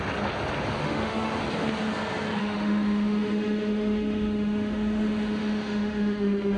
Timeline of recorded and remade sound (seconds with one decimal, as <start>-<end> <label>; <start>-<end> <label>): 0.0-0.8 recorded; 0.8-1.4 remade; 1.4-2.4 recorded; 2.4-6.6 remade